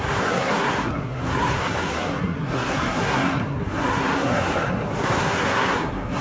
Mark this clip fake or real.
fake